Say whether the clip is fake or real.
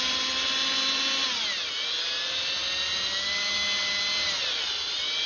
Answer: real